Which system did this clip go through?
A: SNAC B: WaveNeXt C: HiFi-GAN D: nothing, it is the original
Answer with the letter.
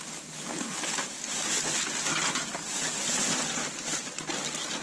D